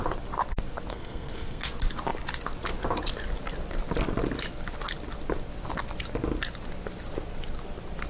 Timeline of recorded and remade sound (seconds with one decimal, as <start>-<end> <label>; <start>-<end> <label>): 0.0-0.9 recorded; 0.9-1.6 remade; 1.6-8.1 recorded